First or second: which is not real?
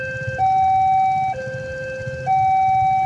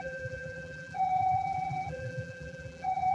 second